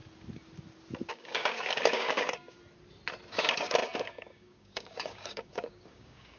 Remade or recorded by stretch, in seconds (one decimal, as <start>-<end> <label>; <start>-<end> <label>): 0.0-1.1 recorded; 1.1-2.6 remade; 2.6-3.3 recorded; 3.3-6.4 remade